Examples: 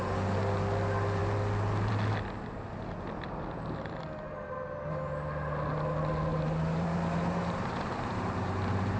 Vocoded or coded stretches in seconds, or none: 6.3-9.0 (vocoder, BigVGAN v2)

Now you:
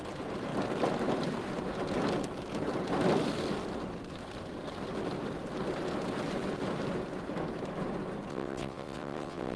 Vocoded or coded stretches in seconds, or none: 8.3-9.6 (vocoder, WaveNeXt)

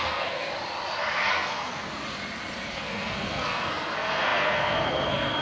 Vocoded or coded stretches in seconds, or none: 0.0-0.5 (codec, SNAC); 1.3-1.8; 2.7-5.4

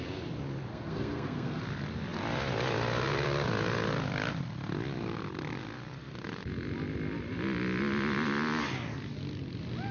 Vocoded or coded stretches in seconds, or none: 0.7-1.6 (codec, SNAC)